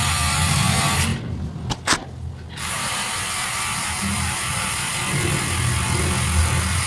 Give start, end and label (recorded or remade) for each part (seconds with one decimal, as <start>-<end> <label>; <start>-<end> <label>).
0.0-1.1 remade; 1.1-2.7 recorded; 2.7-5.0 remade; 5.0-6.4 recorded; 6.4-6.9 remade